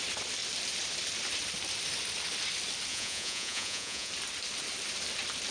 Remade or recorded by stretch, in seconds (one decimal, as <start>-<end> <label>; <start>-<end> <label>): 0.0-2.9 recorded; 2.9-4.1 remade; 4.1-5.5 recorded